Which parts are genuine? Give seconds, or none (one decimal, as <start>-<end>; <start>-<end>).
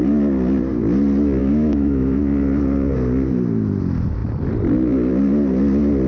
0.0-1.4; 2.2-6.1